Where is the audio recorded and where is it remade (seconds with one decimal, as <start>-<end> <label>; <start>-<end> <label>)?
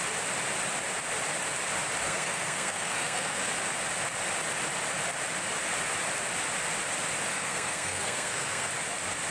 0.0-2.0 recorded; 2.0-3.5 remade; 3.5-7.3 recorded; 7.3-8.7 remade; 8.7-9.3 recorded